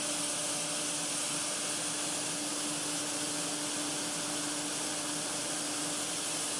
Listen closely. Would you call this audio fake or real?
real